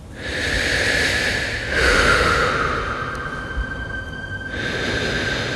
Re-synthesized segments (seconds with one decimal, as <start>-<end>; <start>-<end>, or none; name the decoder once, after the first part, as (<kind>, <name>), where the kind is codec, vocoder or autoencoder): 1.7-2.5 (autoencoder, DAC-VAE)